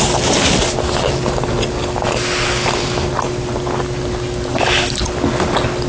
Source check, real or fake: real